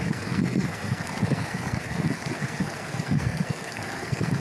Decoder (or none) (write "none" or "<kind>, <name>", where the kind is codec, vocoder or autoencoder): codec, SNAC